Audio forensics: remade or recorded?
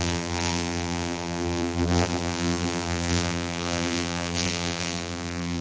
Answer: remade